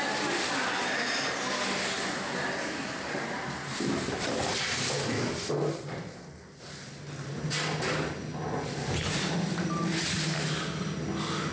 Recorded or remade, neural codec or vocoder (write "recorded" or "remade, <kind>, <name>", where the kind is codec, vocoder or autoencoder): recorded